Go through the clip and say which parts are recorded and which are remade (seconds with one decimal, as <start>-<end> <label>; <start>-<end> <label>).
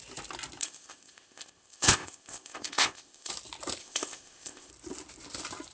0.0-0.6 recorded; 0.6-3.3 remade; 3.3-3.8 recorded; 3.8-4.7 remade; 4.7-5.7 recorded